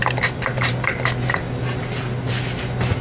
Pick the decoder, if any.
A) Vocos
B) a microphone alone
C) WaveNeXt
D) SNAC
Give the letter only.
B